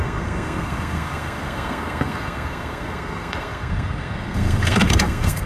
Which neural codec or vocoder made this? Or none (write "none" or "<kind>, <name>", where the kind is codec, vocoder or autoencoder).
codec, SNAC